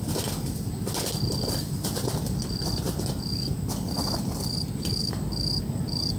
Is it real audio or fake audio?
real